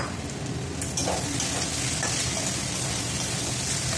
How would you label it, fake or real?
real